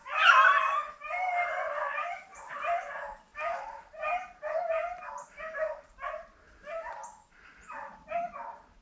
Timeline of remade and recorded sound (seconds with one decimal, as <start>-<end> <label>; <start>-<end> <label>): 0.0-8.8 recorded